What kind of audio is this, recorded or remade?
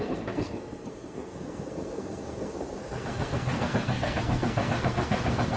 remade